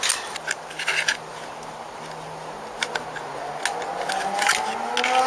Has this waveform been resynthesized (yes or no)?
no